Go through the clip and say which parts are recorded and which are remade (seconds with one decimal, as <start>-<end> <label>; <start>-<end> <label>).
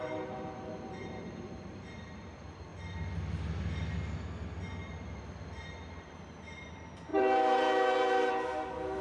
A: 0.0-2.7 remade; 2.7-6.0 recorded; 6.0-9.0 remade